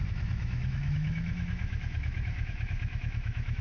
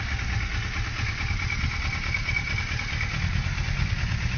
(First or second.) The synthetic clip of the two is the first